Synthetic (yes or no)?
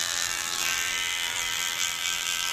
yes